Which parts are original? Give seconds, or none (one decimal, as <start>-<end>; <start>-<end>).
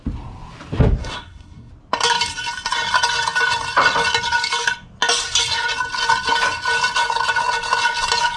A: 0.0-1.0; 1.7-8.4